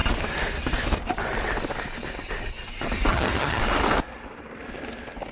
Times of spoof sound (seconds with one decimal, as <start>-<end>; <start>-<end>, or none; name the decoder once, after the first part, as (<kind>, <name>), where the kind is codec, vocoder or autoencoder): 3.1-3.6 (vocoder, HiFi-GAN)